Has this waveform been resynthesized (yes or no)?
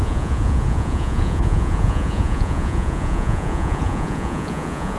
yes